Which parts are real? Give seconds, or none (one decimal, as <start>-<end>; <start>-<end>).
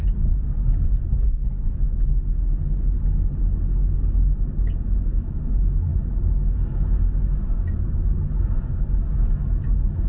0.0-1.4; 2.1-10.1